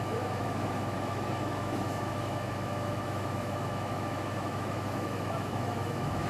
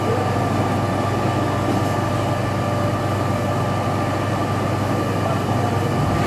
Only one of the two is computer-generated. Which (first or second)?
first